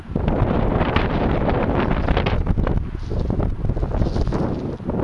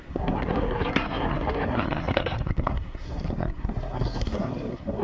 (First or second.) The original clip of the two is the first